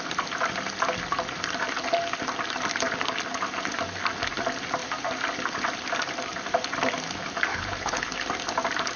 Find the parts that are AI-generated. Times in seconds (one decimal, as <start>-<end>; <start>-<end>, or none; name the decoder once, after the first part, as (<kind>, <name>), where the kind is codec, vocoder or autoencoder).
7.5-8.1 (codec, HILCodec)